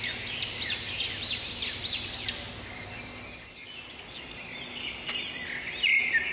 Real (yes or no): yes